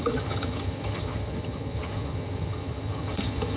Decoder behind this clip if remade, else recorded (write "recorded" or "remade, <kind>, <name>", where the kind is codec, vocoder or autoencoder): remade, vocoder, HiFi-GAN